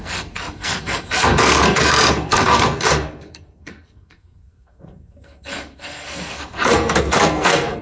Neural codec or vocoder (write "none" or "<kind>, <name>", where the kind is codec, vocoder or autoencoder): codec, SNAC